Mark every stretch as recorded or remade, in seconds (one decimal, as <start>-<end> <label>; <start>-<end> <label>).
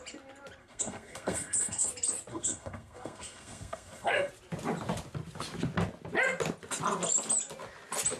0.0-0.6 recorded; 0.6-1.9 remade; 1.9-2.3 recorded; 2.3-4.3 remade; 4.3-8.2 recorded